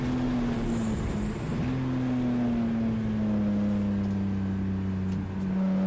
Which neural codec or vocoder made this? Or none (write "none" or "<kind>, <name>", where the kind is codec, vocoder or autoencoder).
none